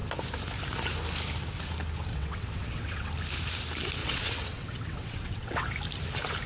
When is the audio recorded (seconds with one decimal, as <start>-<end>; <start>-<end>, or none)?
0.0-2.1; 3.1-4.0; 5.7-6.5